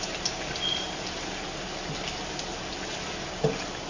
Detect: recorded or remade recorded